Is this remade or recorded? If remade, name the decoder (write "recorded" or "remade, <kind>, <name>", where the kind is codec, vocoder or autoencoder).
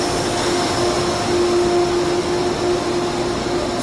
recorded